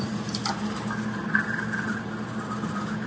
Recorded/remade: recorded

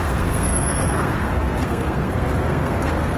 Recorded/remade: remade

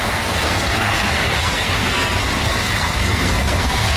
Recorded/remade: remade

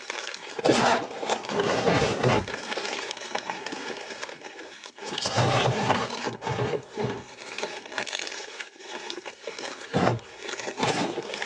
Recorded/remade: remade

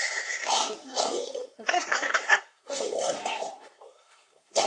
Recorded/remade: remade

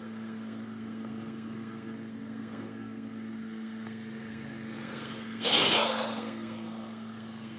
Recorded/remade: remade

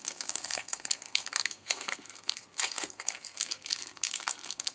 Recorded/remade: remade